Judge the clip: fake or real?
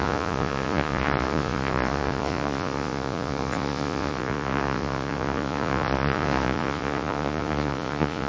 fake